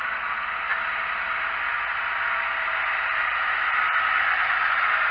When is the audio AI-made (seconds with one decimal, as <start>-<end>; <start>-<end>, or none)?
none